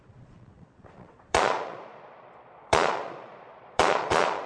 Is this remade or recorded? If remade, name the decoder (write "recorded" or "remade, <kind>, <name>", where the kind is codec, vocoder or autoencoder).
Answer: remade, vocoder, Vocos